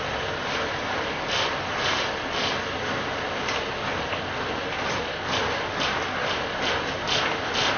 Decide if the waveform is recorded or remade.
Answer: recorded